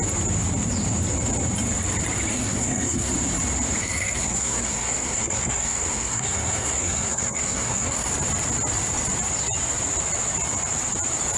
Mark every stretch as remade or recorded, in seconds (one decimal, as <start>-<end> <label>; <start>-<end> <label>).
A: 0.0-2.3 recorded; 2.3-3.1 remade; 3.1-3.8 recorded; 3.8-8.1 remade; 8.1-11.4 recorded